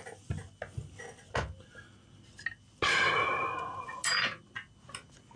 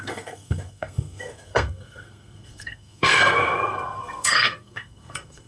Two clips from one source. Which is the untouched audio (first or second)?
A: first